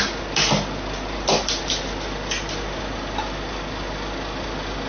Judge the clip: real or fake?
real